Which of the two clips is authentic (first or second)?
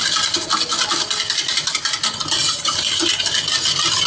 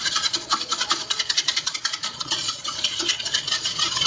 first